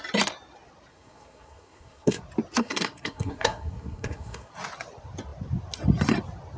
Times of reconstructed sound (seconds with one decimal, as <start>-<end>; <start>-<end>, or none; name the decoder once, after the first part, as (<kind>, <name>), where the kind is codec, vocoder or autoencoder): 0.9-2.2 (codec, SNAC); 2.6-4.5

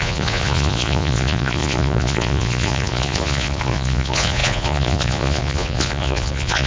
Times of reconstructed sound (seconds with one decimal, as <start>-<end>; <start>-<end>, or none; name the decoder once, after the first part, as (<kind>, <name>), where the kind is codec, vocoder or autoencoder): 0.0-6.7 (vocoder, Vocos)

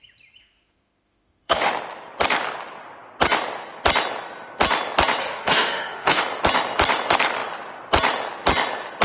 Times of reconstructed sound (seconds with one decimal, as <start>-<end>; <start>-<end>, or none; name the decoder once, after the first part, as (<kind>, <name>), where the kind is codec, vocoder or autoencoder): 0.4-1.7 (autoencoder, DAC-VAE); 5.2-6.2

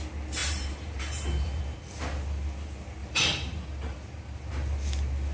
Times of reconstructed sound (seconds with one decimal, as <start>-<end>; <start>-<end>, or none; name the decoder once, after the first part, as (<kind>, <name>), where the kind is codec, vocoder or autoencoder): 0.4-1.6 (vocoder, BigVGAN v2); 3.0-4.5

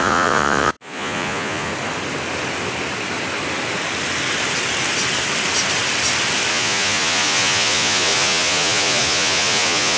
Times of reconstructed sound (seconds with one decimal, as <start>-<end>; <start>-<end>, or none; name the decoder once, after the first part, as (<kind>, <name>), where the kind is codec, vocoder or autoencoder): 0.0-1.7 (vocoder, Vocos); 6.5-10.0

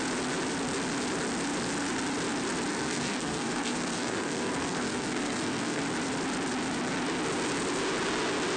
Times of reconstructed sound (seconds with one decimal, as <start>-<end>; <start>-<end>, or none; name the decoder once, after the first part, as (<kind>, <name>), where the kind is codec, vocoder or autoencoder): 2.7-5.8 (codec, SNAC)

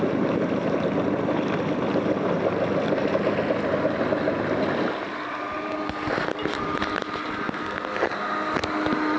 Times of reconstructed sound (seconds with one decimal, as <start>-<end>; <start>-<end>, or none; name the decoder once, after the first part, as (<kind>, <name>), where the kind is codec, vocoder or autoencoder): none

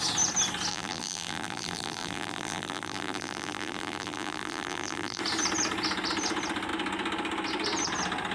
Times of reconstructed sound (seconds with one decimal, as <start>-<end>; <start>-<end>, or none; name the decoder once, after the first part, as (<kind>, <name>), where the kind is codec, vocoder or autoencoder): 0.7-5.2 (vocoder, BigVGAN v2)